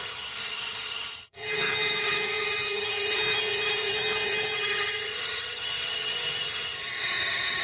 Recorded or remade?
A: remade